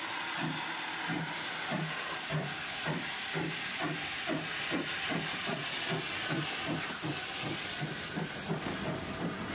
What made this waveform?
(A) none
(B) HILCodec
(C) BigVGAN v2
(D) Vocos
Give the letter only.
A